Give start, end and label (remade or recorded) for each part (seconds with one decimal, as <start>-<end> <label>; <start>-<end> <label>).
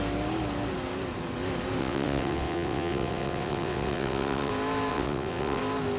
0.0-1.8 recorded; 1.8-4.5 remade; 4.5-4.9 recorded; 4.9-5.6 remade; 5.6-6.0 recorded